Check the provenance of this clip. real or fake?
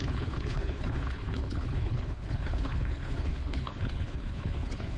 fake